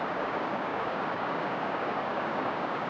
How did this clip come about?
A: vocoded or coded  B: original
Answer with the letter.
A